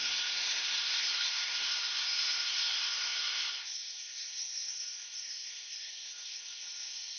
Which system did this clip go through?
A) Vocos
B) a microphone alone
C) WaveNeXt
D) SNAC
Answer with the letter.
D